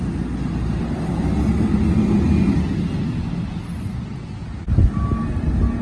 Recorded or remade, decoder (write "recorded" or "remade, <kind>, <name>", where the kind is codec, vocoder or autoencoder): recorded